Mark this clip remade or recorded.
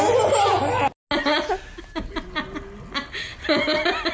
recorded